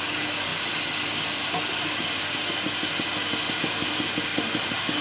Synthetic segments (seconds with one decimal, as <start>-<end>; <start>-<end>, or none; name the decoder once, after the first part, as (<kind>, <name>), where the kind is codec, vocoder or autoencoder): none

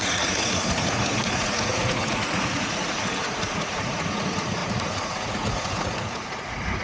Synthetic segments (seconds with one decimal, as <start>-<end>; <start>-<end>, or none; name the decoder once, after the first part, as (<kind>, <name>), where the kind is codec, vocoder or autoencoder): 0.0-6.8 (vocoder, Vocos)

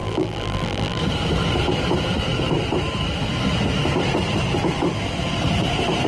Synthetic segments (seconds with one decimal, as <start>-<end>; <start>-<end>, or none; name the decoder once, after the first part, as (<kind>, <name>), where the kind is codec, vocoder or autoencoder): 0.0-1.0 (vocoder, BigVGAN v2)

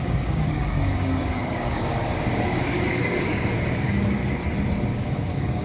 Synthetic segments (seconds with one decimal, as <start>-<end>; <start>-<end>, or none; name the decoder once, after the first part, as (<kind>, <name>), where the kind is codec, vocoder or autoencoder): 0.0-4.2 (codec, DAC); 4.9-5.6